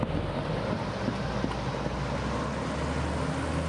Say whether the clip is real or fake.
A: real